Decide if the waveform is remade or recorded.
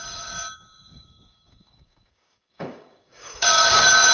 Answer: remade